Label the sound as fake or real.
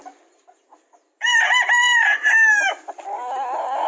real